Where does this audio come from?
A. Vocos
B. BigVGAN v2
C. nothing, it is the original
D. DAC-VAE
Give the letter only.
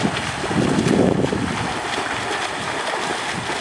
C